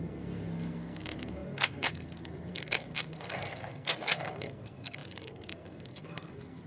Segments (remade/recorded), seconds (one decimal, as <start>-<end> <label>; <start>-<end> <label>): 0.0-6.7 remade